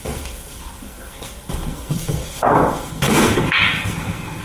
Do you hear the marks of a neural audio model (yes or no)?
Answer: yes